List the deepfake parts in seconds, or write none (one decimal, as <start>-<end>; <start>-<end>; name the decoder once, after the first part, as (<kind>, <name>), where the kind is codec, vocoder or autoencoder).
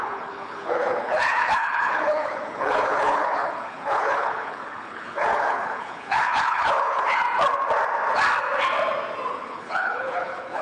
0.0-7.2 (codec, HILCodec); 9.3-10.6